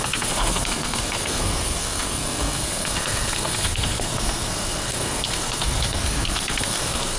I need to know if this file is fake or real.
fake